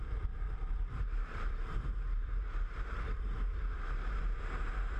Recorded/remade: remade